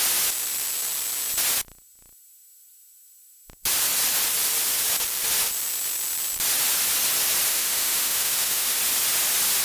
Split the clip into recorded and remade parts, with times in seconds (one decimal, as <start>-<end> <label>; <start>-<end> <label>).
0.0-7.5 recorded; 7.5-8.8 remade; 8.8-9.6 recorded